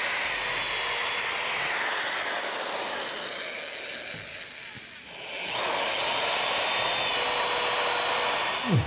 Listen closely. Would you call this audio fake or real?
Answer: real